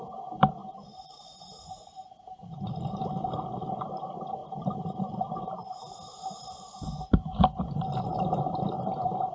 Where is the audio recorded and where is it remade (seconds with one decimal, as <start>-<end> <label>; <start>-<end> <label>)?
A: 0.0-9.3 recorded